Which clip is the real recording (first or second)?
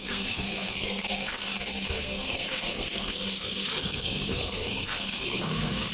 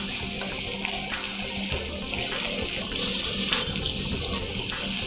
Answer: second